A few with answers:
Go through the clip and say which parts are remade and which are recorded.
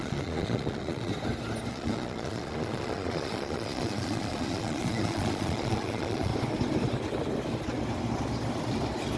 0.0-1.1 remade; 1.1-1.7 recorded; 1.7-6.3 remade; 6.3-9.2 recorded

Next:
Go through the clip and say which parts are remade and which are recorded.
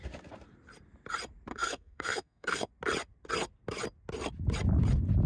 0.0-1.5 recorded; 1.5-2.7 remade; 2.7-5.3 recorded